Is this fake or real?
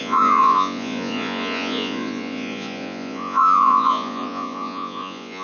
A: fake